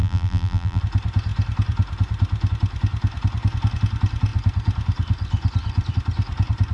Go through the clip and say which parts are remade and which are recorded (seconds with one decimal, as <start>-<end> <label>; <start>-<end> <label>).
0.0-0.8 remade; 0.8-6.7 recorded